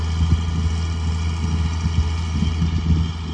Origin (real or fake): real